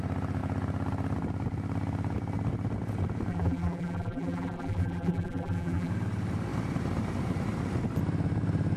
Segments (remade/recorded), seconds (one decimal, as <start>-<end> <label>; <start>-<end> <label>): 0.0-3.3 recorded; 3.3-5.9 remade; 5.9-8.8 recorded